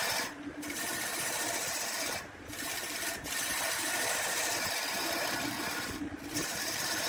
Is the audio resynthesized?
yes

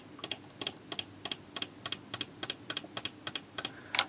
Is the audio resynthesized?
no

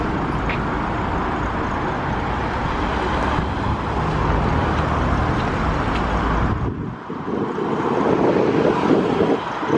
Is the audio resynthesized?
no